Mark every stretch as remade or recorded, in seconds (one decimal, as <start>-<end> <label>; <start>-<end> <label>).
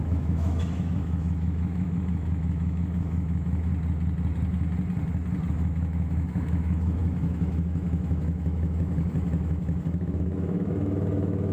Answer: 0.0-3.7 remade; 3.7-5.5 recorded; 5.5-11.5 remade